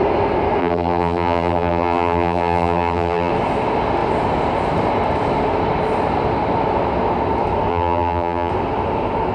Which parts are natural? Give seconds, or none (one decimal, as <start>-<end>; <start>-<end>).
0.0-0.6; 3.3-7.7; 8.5-9.3